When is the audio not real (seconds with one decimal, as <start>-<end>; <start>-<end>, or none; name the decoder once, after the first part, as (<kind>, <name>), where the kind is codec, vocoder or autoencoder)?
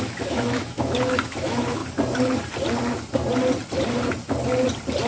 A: 0.0-1.8 (autoencoder, DAC-VAE)